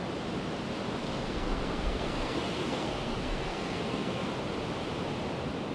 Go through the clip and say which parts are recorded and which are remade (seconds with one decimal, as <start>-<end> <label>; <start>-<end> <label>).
0.0-1.0 recorded; 1.0-4.3 remade; 4.3-5.7 recorded